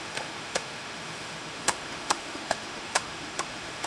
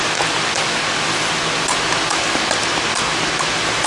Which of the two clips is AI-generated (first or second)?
first